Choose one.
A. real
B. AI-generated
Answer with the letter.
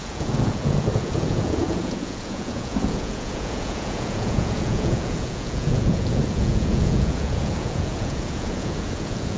B